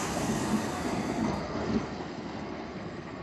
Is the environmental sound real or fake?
fake